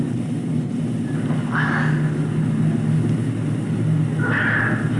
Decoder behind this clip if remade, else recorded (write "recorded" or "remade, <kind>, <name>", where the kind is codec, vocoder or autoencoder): recorded